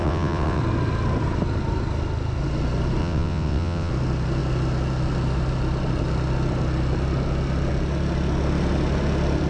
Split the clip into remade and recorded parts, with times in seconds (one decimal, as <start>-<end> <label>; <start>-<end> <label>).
0.0-0.6 remade; 0.6-3.0 recorded; 3.0-3.9 remade; 3.9-9.5 recorded